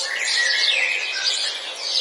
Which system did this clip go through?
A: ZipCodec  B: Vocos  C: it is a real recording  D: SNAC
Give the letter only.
B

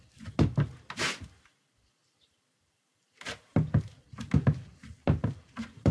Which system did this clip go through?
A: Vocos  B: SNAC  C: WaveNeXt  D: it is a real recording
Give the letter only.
D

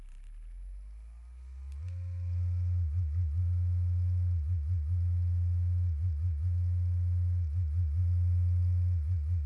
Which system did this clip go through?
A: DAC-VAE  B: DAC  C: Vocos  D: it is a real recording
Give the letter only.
D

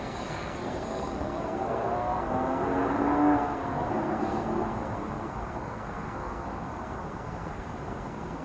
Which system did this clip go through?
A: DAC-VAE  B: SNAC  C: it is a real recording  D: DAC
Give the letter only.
B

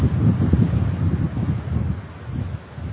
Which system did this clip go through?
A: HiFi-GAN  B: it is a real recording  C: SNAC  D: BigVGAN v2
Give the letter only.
B